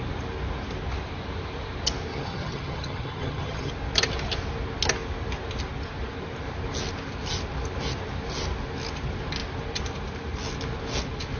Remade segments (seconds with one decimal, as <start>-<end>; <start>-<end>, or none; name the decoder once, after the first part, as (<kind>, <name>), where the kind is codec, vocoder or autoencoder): 2.1-3.7 (vocoder, HiFi-GAN)